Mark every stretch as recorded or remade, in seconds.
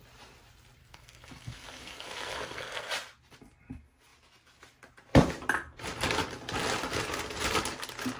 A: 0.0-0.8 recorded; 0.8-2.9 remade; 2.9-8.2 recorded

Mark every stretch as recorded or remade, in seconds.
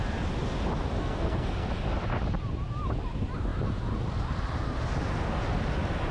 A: 0.0-1.0 recorded; 1.0-1.7 remade; 1.7-6.1 recorded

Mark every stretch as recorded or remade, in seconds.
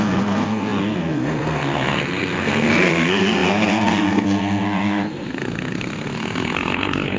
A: 0.0-7.2 remade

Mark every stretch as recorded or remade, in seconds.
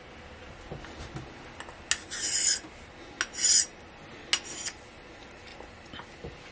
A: 0.0-6.5 recorded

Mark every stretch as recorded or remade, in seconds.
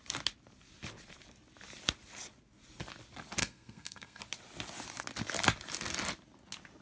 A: 0.0-3.4 recorded; 3.4-4.2 remade; 4.2-6.8 recorded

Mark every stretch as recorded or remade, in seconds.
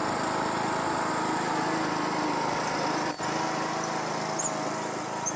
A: 0.0-5.4 recorded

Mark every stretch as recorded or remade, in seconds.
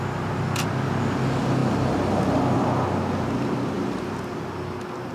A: 0.0-5.1 recorded